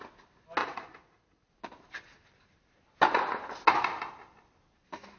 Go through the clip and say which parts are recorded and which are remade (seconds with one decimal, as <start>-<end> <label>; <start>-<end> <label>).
0.0-0.6 recorded; 0.6-1.5 remade; 1.5-5.2 recorded